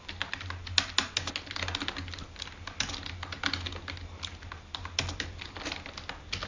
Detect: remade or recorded recorded